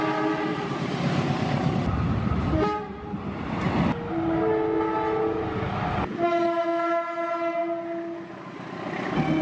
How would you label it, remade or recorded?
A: recorded